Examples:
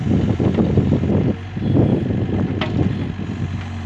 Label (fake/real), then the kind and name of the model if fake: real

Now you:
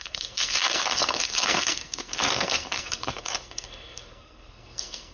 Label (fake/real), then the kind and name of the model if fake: fake, codec, SNAC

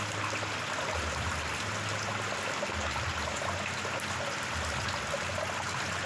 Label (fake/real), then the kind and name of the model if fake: real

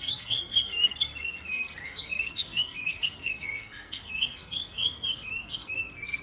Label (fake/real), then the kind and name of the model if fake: fake, codec, SNAC